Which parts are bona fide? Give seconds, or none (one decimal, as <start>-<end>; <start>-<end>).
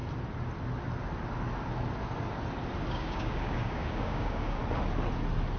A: 0.0-2.9; 4.6-5.6